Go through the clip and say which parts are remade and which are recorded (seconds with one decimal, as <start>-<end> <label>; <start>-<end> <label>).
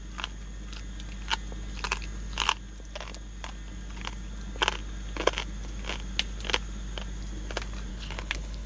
0.0-7.9 recorded; 7.9-8.7 remade